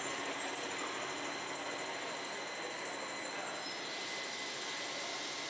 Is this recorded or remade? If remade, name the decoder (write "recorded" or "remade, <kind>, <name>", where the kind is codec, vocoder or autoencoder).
recorded